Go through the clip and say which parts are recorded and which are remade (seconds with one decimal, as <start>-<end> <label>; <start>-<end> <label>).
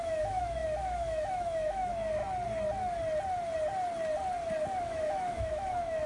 0.0-2.2 remade; 2.2-4.8 recorded; 4.8-6.1 remade